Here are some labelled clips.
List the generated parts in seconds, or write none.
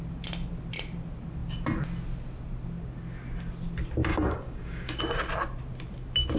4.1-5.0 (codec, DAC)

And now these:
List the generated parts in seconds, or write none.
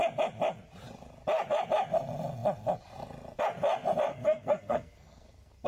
4.1-5.7 (codec, SNAC)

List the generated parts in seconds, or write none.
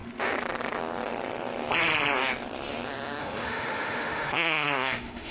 3.2-5.3 (autoencoder, DAC-VAE)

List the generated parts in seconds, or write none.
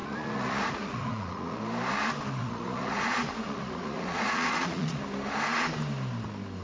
0.0-1.6 (vocoder, Vocos); 2.4-5.0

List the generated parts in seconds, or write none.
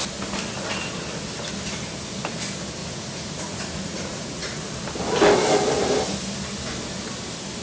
2.8-4.7 (vocoder, Vocos)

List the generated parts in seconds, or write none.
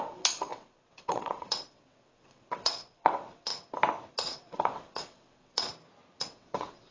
0.0-3.5 (vocoder, WaveNeXt); 4.1-5.7; 6.3-6.9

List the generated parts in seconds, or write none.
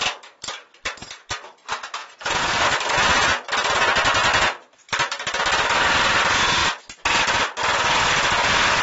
2.0-2.6 (vocoder, Vocos)